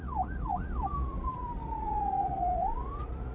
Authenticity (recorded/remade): remade